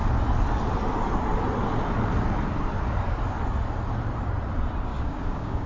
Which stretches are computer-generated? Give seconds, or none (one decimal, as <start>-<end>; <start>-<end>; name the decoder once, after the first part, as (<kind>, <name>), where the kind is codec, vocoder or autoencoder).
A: 4.9-5.7 (codec, DAC)